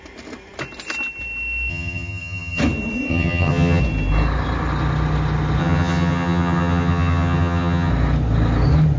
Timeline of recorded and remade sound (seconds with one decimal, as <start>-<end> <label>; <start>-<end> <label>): 0.0-1.7 recorded; 1.7-2.6 remade; 2.6-3.1 recorded; 3.1-3.8 remade; 3.8-5.6 recorded; 5.6-7.9 remade; 7.9-9.0 recorded